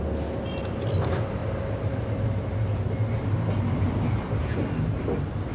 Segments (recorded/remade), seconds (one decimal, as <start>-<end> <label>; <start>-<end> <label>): 0.0-5.5 recorded